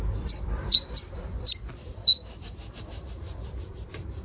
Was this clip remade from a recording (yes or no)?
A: yes